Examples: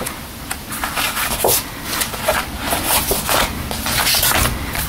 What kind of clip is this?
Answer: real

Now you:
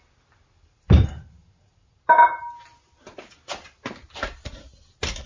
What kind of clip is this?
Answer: real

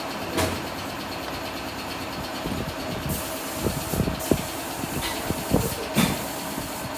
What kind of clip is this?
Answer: real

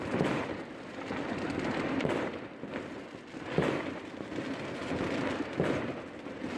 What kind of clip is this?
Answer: real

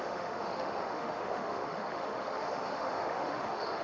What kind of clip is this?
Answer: fake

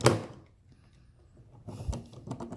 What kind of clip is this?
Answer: real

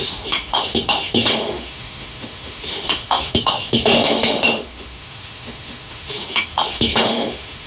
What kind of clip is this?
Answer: fake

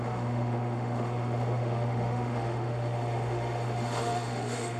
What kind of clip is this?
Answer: fake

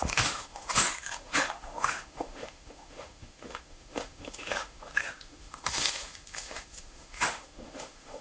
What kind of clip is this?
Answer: fake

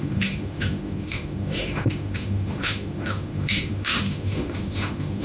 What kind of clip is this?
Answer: fake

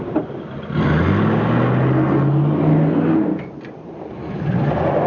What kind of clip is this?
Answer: real